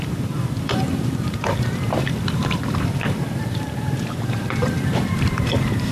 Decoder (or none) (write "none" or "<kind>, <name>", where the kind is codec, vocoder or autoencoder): vocoder, BigVGAN v2